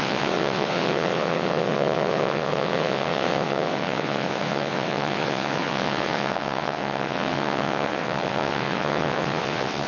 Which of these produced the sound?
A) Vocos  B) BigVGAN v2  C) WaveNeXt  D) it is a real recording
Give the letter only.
C